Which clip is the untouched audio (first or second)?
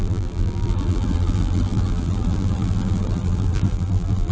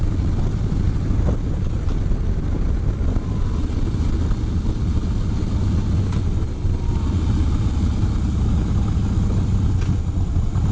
second